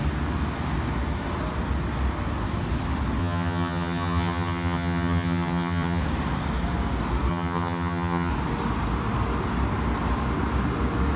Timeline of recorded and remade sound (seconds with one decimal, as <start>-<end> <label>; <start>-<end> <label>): 0.0-3.2 recorded; 3.2-6.0 remade; 6.0-7.3 recorded; 7.3-8.3 remade; 8.3-11.2 recorded